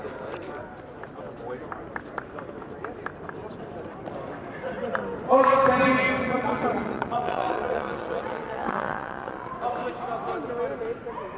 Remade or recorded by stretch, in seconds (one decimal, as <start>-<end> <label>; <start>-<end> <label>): 0.0-6.2 recorded; 6.2-9.5 remade; 9.5-11.4 recorded